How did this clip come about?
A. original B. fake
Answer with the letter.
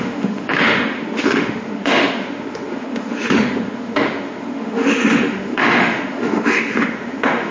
B